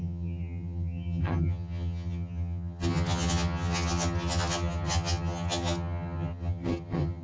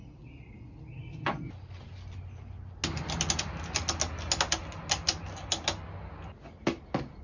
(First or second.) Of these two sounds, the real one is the second